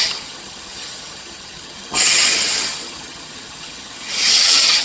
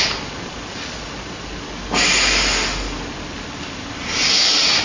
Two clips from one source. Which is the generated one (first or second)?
first